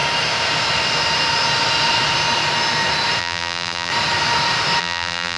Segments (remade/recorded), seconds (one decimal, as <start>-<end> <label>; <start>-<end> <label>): 0.0-3.2 recorded; 3.2-3.9 remade; 3.9-4.8 recorded; 4.8-5.4 remade